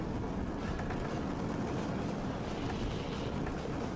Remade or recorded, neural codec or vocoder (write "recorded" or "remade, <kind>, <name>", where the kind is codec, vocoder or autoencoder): recorded